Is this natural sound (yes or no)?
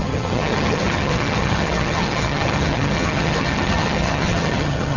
no